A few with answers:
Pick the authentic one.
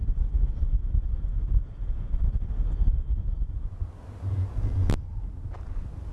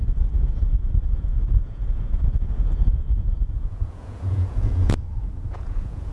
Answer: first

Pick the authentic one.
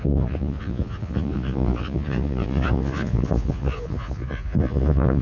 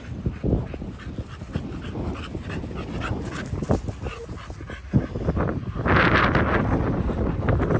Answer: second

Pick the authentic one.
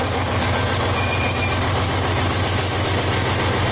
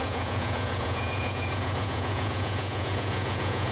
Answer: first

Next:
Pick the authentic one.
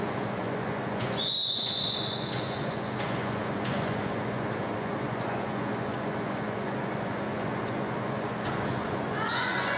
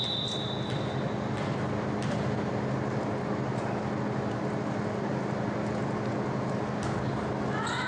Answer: second